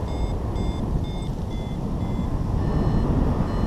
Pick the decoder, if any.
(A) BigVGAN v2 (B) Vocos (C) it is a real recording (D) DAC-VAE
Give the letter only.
C